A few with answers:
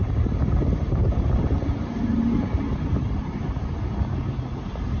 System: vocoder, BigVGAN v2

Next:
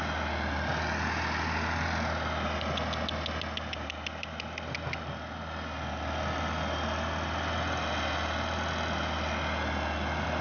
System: none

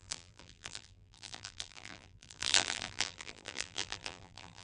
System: vocoder, BigVGAN v2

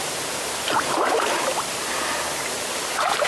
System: vocoder, BigVGAN v2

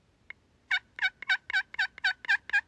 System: none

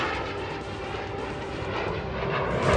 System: none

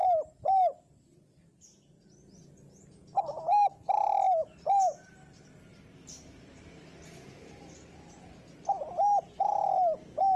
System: none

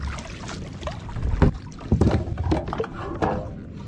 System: none